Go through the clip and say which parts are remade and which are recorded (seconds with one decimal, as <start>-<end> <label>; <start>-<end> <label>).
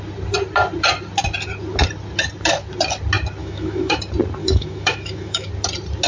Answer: 0.0-3.4 recorded; 3.4-4.0 remade; 4.0-4.4 recorded; 4.4-5.5 remade; 5.5-6.1 recorded